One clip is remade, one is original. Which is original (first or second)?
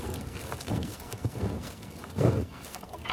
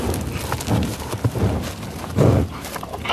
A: second